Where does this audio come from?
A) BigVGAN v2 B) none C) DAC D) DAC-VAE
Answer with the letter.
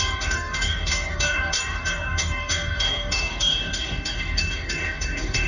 C